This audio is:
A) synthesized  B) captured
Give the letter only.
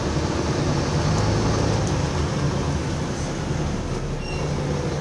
B